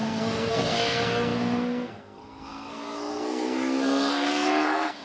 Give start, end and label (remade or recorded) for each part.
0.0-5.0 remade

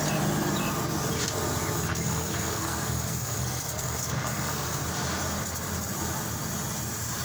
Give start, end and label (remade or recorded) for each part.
0.0-1.9 recorded; 1.9-4.8 remade; 4.8-7.2 recorded

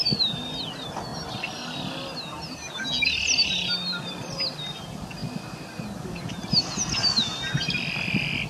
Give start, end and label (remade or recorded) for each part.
0.0-8.5 recorded

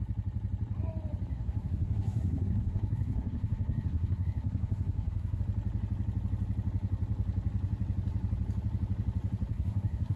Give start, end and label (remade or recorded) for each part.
0.0-1.3 recorded; 1.3-5.4 remade; 5.4-9.5 recorded; 9.5-10.2 remade

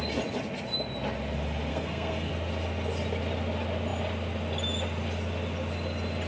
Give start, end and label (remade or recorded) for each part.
0.0-1.7 recorded; 1.7-2.3 remade; 2.3-6.3 recorded

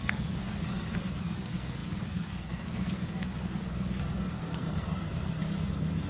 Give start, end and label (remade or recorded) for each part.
0.0-6.1 remade

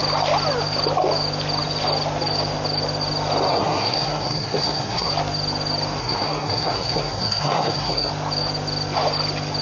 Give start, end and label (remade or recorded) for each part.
0.0-3.5 recorded; 3.5-5.1 remade; 5.1-6.0 recorded; 6.0-8.1 remade; 8.1-9.6 recorded

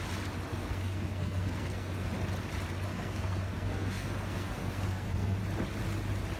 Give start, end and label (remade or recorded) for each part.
0.0-0.5 recorded; 0.5-2.1 remade; 2.1-2.9 recorded; 2.9-5.4 remade; 5.4-6.4 recorded